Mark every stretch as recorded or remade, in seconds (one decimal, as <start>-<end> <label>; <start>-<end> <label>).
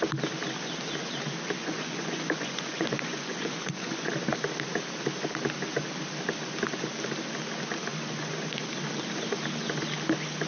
0.0-1.6 recorded; 1.6-4.1 remade; 4.1-7.9 recorded; 7.9-8.7 remade; 8.7-10.5 recorded